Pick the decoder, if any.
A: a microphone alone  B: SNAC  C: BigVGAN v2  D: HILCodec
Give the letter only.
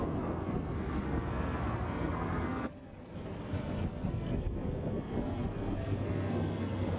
B